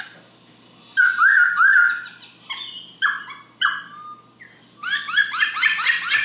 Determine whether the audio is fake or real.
real